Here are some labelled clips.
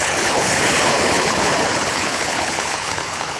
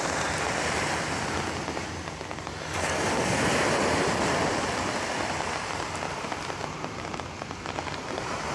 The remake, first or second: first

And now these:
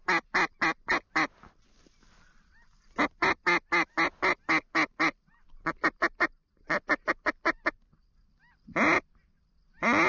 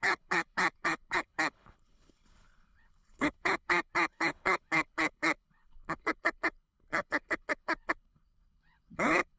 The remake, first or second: second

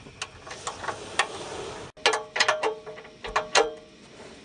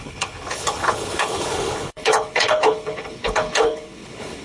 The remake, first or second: second